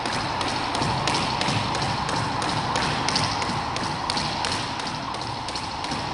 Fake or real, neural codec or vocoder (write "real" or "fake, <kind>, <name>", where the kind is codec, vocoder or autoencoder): real